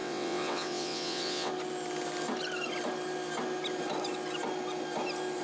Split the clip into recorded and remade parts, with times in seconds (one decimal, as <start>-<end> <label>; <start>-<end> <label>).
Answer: 0.0-1.5 remade; 1.5-5.4 recorded